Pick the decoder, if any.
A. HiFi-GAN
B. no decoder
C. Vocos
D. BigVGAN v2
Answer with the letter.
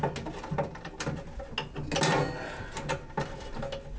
B